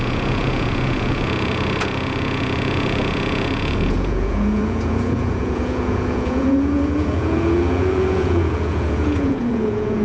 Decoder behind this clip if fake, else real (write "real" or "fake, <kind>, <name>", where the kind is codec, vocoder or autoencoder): fake, vocoder, Vocos